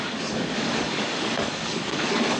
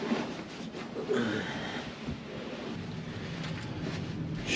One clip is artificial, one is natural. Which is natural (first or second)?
second